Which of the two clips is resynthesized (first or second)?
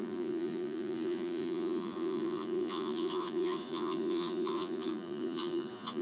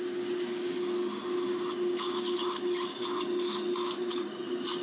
first